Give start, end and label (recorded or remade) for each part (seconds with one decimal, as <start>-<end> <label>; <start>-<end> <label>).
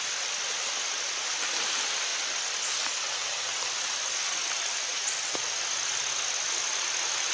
0.0-7.3 recorded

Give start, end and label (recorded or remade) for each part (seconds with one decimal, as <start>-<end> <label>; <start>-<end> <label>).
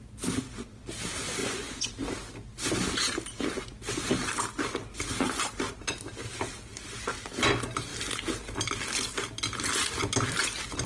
0.0-1.4 recorded; 1.4-1.9 remade; 1.9-10.9 recorded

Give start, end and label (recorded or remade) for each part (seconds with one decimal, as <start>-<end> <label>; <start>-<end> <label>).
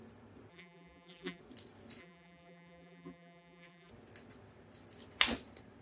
0.0-0.5 recorded; 0.5-1.4 remade; 1.4-2.0 recorded; 2.0-3.9 remade; 3.9-5.8 recorded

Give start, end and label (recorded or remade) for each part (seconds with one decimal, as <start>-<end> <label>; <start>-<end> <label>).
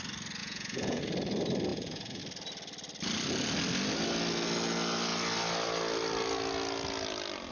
0.0-0.4 recorded; 0.4-1.0 remade; 1.0-1.7 recorded; 1.7-2.2 remade; 2.2-7.5 recorded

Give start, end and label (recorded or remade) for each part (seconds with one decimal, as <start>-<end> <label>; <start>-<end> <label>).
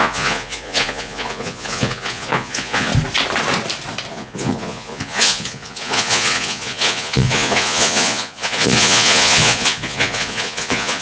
0.0-2.9 remade; 2.9-4.1 recorded; 4.1-11.0 remade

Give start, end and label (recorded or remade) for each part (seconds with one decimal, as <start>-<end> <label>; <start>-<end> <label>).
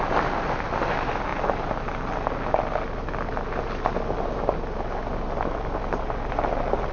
0.0-6.9 recorded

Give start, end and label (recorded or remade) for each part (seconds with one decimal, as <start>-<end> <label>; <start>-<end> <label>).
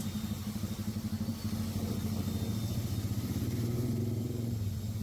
0.0-5.0 recorded